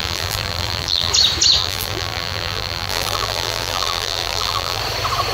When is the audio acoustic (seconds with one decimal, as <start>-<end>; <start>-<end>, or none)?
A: 1.1-1.6; 4.8-5.3

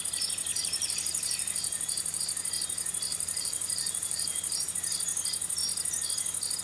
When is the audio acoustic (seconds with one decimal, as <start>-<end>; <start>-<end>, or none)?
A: 0.0-0.5; 2.2-3.1; 4.7-6.6

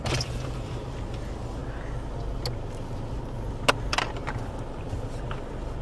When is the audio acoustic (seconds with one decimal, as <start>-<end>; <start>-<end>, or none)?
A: 1.6-3.7

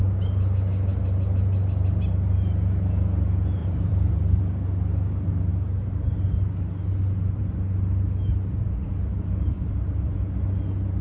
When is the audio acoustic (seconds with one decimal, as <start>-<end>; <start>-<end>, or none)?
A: 0.0-3.6; 4.4-11.0

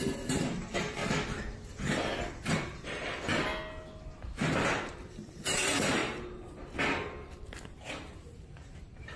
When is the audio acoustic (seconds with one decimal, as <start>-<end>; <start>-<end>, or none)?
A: 1.0-2.5; 3.3-4.9; 6.0-8.2